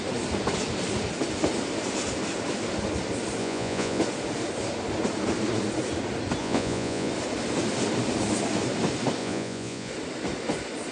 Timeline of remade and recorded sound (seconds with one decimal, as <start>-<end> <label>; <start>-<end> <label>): 0.0-3.4 recorded; 3.4-4.0 remade; 4.0-6.4 recorded; 6.4-7.1 remade; 7.1-9.2 recorded; 9.2-9.9 remade; 9.9-10.9 recorded